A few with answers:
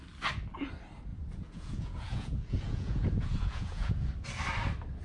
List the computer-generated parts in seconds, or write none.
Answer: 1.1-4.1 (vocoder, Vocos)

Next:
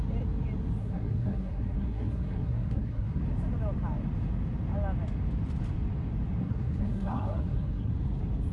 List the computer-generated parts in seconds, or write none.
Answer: 0.8-3.2 (codec, SNAC); 6.4-7.9

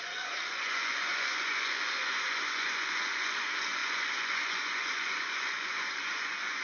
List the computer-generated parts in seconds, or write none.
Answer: 0.0-6.6 (vocoder, Vocos)

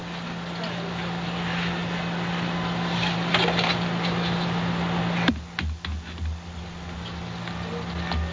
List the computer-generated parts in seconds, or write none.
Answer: none

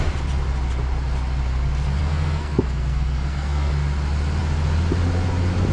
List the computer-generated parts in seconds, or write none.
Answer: 2.0-3.7 (codec, SNAC)

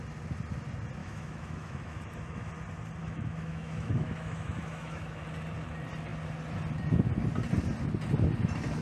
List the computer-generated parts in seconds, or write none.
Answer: 1.0-2.5 (autoencoder, DAC-VAE); 3.0-5.2